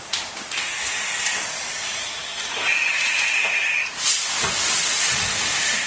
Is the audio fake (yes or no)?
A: no